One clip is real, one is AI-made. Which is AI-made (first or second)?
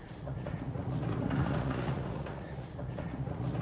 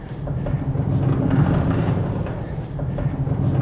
first